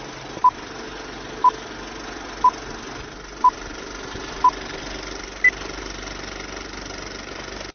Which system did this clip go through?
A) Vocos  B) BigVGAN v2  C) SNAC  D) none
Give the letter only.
D